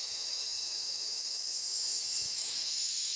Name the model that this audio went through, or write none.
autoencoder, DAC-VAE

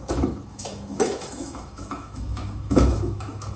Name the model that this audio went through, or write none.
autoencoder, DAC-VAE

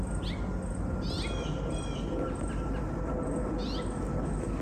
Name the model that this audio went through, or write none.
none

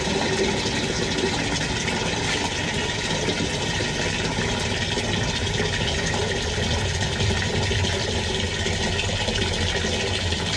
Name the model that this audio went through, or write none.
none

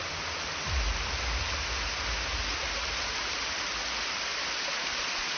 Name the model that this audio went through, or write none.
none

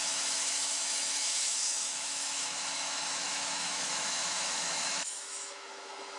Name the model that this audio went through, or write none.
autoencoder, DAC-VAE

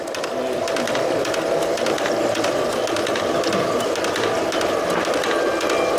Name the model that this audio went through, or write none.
none